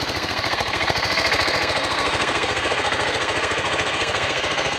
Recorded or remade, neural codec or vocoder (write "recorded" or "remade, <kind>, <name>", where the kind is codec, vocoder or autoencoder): remade, codec, SNAC